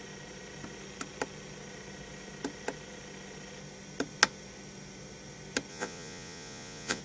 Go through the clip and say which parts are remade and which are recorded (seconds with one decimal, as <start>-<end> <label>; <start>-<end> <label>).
0.0-5.7 recorded; 5.7-7.0 remade